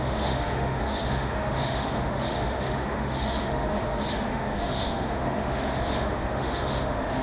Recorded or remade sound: remade